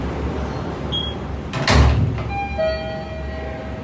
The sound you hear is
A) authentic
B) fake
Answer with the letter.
A